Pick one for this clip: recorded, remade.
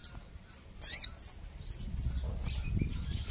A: recorded